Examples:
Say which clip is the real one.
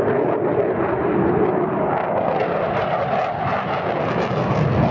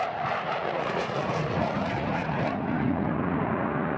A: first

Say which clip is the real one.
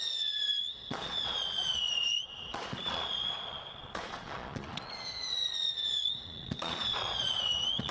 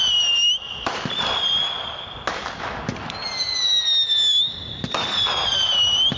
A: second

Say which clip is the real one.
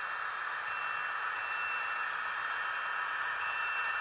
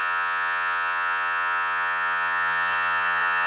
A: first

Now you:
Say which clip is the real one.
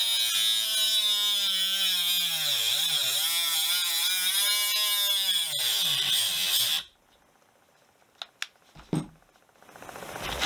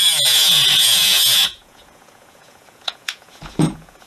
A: first